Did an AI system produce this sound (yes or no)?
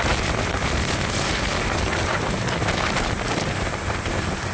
no